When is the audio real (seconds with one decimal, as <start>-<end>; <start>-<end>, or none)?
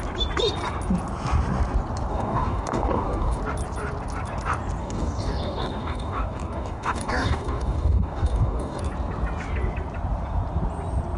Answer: 0.0-2.1; 3.4-4.8; 8.8-11.2